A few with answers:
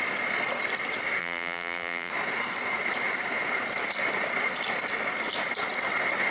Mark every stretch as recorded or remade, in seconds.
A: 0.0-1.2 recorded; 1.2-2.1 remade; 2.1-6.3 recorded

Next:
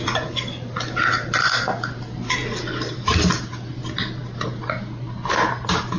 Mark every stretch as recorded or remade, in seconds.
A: 0.0-6.0 recorded

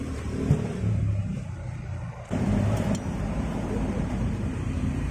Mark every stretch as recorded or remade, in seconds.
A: 0.0-5.1 remade

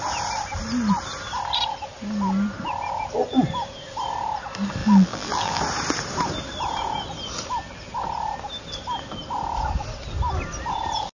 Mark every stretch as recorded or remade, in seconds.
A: 0.0-4.8 recorded; 4.8-5.6 remade; 5.6-11.2 recorded

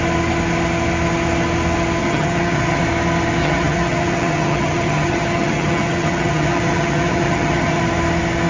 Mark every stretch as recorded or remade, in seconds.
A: 0.0-2.0 recorded; 2.0-2.8 remade; 2.8-3.4 recorded; 3.4-7.8 remade; 7.8-8.5 recorded

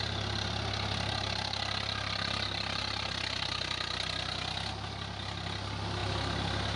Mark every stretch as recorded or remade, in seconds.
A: 0.0-6.8 recorded

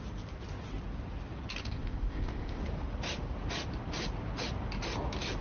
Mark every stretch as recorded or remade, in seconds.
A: 0.0-1.6 recorded; 1.6-2.6 remade; 2.6-5.4 recorded